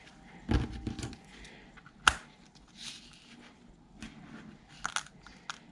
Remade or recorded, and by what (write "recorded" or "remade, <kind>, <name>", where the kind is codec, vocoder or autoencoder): recorded